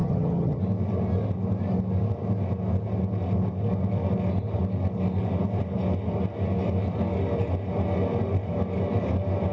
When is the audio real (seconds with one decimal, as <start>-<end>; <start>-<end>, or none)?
0.6-9.5